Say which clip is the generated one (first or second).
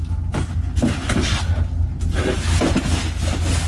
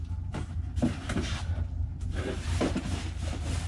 second